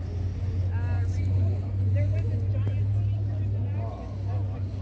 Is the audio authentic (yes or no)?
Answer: yes